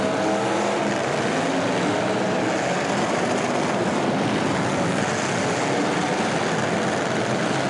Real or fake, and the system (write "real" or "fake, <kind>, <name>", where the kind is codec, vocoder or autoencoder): real